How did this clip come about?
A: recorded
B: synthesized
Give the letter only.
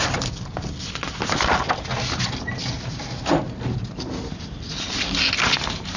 A